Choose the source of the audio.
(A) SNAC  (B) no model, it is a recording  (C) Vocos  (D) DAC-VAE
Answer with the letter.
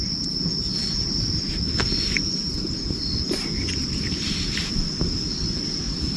B